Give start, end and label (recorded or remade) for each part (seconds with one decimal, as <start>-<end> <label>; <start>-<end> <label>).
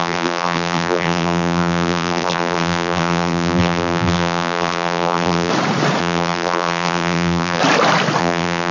0.0-5.5 remade; 5.5-6.0 recorded; 6.0-7.6 remade; 7.6-8.2 recorded; 8.2-8.7 remade